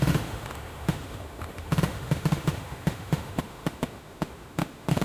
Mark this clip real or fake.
fake